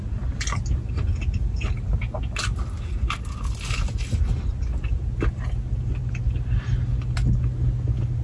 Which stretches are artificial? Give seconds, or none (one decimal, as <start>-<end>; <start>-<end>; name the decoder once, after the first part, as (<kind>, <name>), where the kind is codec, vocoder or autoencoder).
none